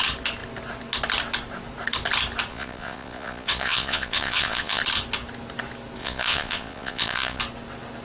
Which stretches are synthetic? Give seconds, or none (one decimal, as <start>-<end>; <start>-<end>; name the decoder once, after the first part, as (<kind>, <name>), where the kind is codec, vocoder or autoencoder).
2.5-4.8 (vocoder, Vocos); 6.0-7.4